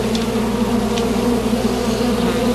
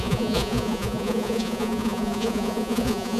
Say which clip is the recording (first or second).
first